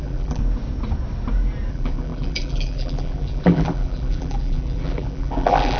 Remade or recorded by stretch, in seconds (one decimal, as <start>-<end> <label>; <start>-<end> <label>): 0.0-0.4 remade; 0.4-1.7 recorded; 1.7-5.8 remade